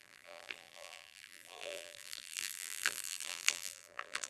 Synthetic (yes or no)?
yes